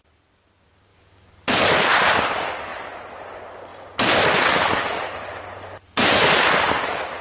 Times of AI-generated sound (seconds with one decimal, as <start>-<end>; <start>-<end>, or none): none